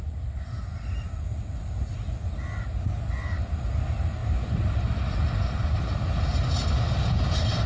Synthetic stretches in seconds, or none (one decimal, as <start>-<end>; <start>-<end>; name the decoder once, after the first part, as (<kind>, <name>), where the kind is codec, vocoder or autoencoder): 4.2-6.1 (vocoder, BigVGAN v2)